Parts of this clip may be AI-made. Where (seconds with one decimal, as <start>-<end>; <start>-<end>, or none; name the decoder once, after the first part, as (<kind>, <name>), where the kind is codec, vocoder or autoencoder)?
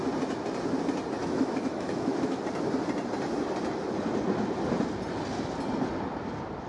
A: 1.2-2.4 (autoencoder, DAC-VAE)